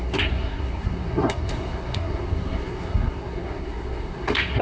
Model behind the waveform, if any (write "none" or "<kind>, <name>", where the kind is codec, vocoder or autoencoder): codec, SNAC